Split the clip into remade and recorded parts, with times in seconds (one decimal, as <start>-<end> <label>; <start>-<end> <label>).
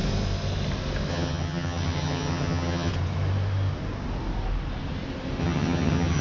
0.0-1.1 recorded; 1.1-2.9 remade; 2.9-5.4 recorded; 5.4-6.2 remade